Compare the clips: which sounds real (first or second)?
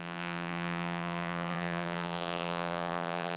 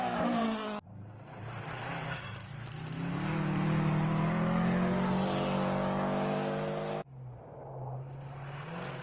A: second